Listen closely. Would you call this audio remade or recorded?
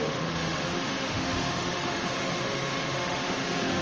remade